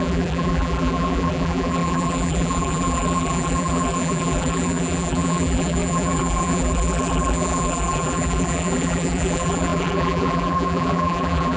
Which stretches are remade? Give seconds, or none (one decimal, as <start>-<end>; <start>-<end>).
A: 0.0-11.6